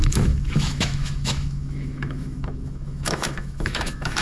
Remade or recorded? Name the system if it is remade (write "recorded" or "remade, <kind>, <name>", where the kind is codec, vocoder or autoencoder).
remade, autoencoder, DAC-VAE